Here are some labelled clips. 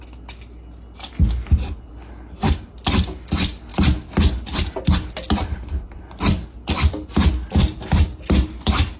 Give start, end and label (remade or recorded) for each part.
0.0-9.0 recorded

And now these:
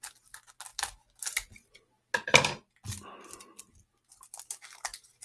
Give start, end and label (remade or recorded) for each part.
0.0-5.2 recorded